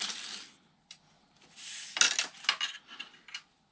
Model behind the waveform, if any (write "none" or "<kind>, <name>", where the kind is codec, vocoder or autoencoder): none